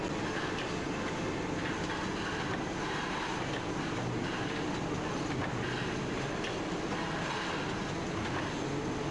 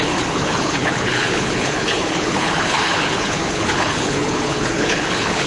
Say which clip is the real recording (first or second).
first